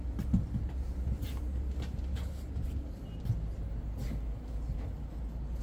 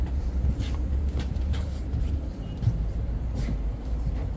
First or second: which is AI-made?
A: second